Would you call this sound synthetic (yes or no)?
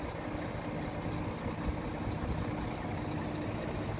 no